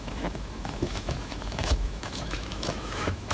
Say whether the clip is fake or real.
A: fake